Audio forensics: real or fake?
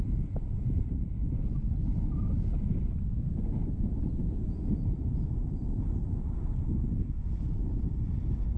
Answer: real